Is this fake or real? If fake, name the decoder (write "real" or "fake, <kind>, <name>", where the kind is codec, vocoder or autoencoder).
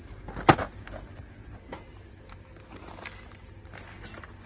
real